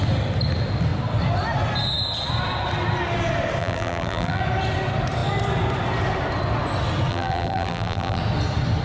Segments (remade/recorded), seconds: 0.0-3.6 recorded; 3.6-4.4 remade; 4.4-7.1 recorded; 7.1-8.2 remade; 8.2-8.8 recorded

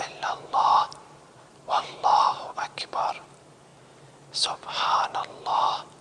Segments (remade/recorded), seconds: 0.0-3.7 remade; 3.7-6.0 recorded

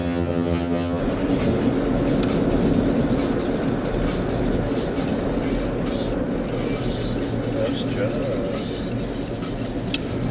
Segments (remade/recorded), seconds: 0.0-1.0 remade; 1.0-10.3 recorded